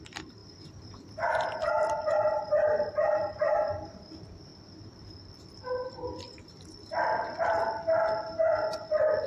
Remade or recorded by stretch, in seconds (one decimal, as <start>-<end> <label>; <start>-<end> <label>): 0.0-9.3 recorded